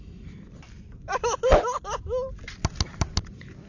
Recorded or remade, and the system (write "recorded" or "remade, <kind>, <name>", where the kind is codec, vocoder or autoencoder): recorded